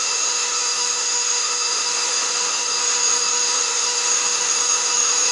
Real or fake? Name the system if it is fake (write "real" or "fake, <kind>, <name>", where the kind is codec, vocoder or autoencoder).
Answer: fake, autoencoder, DAC-VAE